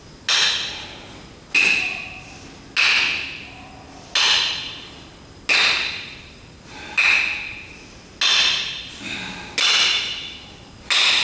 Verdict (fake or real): real